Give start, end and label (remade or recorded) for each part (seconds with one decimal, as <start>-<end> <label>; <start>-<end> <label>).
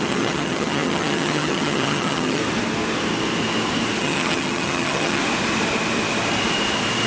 0.0-2.4 remade; 2.4-4.0 recorded; 4.0-5.2 remade; 5.2-7.1 recorded